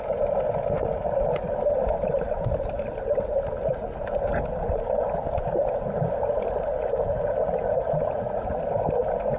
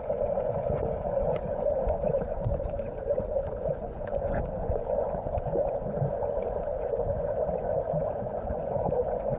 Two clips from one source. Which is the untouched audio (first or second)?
first